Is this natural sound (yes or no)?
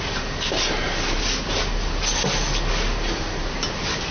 yes